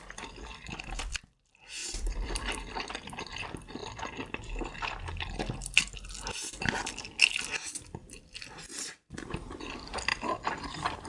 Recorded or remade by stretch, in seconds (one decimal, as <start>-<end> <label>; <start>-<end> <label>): 0.0-3.8 remade; 3.8-8.2 recorded; 8.2-8.7 remade; 8.7-9.7 recorded; 9.7-10.1 remade; 10.1-10.6 recorded; 10.6-11.1 remade